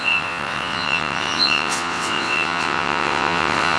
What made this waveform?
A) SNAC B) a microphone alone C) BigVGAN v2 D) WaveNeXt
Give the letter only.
D